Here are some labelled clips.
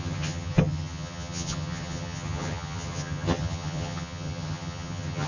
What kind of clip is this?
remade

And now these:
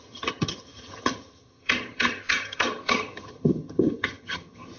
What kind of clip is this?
remade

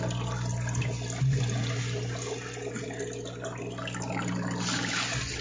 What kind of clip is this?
recorded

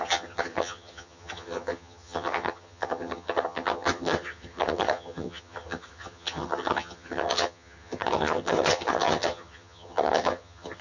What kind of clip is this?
remade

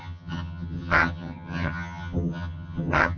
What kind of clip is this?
remade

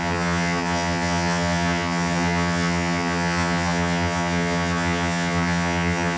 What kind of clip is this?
remade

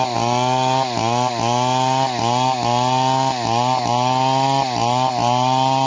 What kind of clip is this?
recorded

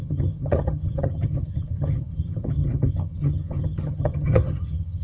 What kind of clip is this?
remade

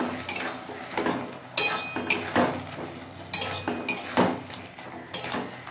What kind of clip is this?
recorded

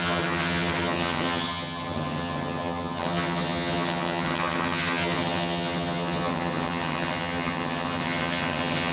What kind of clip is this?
remade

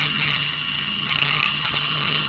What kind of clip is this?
remade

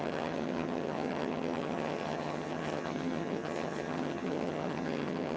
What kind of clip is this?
remade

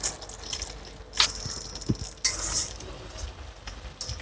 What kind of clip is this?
recorded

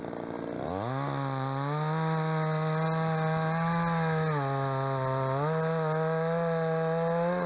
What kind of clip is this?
recorded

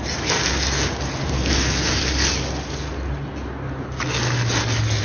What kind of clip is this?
recorded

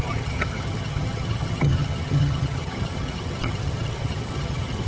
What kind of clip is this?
remade